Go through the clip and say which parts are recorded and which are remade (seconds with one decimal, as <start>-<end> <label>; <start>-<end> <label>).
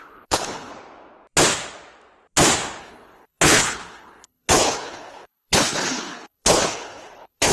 0.0-0.7 remade; 0.7-2.8 recorded; 2.8-7.5 remade